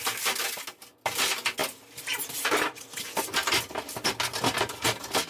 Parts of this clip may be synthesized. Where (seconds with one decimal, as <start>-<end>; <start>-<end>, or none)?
none